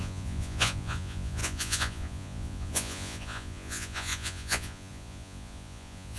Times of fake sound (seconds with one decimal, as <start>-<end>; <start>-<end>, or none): 0.0-6.2